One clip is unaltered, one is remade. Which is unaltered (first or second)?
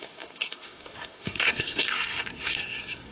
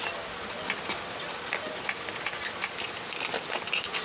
second